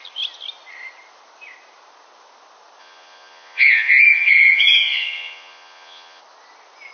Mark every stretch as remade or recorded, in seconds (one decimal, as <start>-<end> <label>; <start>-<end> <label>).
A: 0.0-2.8 recorded; 2.8-6.2 remade; 6.2-6.9 recorded